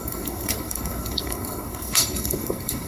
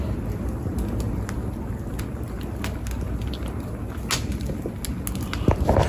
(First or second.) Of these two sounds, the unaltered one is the second